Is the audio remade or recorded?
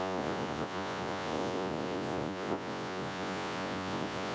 remade